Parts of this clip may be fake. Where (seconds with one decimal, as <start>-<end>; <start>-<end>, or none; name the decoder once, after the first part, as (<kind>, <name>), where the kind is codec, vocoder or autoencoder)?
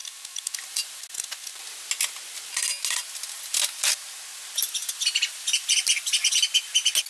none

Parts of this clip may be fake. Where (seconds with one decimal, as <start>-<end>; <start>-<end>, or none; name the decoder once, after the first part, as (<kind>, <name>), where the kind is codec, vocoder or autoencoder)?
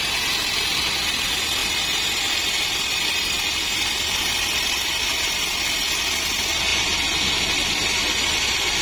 1.6-6.1 (vocoder, BigVGAN v2)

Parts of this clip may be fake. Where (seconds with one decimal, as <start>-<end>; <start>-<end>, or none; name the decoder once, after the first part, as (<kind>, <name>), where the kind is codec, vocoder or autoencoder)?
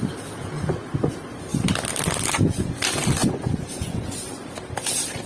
3.2-4.5 (vocoder, Vocos)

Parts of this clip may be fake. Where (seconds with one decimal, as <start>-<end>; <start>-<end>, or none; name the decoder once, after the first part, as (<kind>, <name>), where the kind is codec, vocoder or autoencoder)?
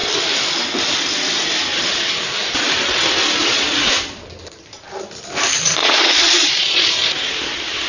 3.4-3.9 (vocoder, Vocos); 5.8-6.9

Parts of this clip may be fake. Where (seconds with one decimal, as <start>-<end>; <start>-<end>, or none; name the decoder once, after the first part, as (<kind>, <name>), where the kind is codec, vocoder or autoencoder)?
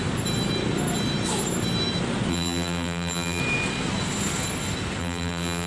2.3-3.4 (vocoder, BigVGAN v2); 5.0-5.7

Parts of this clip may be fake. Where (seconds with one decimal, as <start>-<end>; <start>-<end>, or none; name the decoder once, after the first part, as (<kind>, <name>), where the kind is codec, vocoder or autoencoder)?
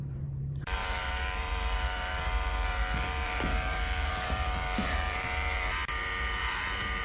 0.0-7.0 (vocoder, BigVGAN v2)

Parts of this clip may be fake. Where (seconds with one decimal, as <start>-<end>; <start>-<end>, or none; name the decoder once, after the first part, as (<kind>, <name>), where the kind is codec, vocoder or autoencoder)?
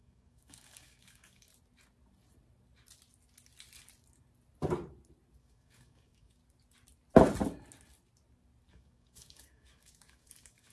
0.0-1.5 (codec, DAC); 5.4-6.4; 8.7-10.7